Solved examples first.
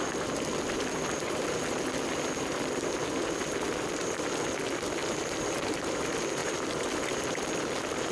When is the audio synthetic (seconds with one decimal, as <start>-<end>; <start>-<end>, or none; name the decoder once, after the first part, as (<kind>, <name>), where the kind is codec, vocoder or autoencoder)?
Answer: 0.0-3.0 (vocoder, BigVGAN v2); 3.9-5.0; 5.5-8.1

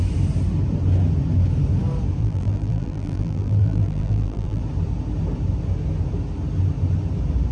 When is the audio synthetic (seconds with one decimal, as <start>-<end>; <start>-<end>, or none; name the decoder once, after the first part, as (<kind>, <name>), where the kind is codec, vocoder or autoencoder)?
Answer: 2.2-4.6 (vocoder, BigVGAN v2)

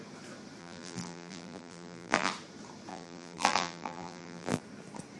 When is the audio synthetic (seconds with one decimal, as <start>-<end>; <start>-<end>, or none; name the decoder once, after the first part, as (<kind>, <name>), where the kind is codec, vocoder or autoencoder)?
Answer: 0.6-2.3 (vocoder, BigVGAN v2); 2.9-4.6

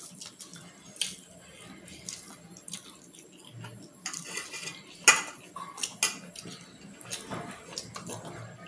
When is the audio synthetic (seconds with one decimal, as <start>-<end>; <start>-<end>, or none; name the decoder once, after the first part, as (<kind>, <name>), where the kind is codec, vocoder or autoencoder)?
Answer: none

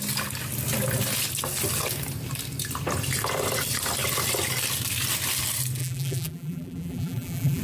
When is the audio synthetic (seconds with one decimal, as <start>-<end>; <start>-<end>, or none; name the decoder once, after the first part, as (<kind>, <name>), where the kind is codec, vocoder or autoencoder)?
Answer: 5.8-7.6 (vocoder, BigVGAN v2)